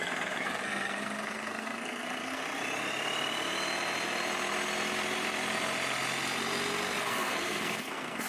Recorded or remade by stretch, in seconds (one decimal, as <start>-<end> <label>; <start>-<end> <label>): 0.0-2.4 remade; 2.4-7.0 recorded; 7.0-8.3 remade